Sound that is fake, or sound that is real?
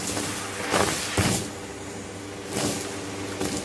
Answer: real